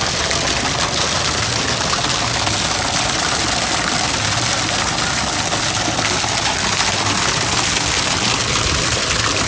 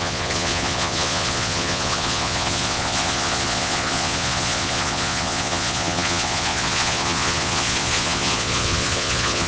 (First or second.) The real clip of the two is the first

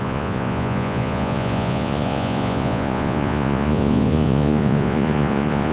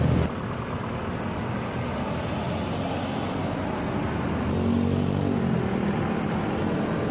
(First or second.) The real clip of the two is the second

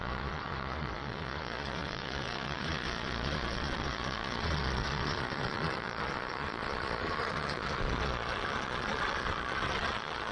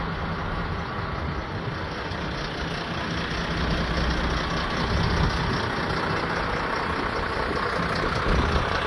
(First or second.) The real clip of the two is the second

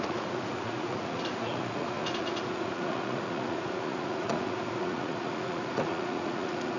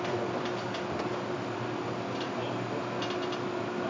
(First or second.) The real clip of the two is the second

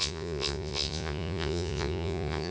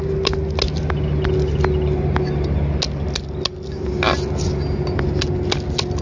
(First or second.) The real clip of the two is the second